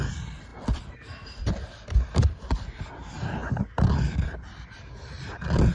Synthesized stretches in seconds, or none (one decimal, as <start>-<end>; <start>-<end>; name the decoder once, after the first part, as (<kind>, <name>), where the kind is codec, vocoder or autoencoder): none